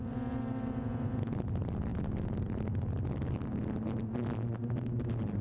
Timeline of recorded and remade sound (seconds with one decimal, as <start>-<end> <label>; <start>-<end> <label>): 0.0-5.4 recorded